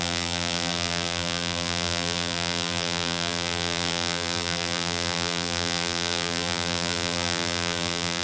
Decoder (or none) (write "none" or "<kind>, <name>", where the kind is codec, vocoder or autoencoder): vocoder, BigVGAN v2